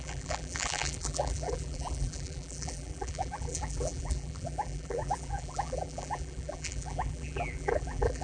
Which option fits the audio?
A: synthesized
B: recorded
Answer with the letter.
A